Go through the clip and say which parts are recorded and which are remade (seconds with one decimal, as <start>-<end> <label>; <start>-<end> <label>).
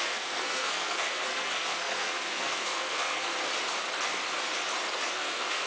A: 0.0-3.3 remade; 3.3-5.1 recorded; 5.1-5.7 remade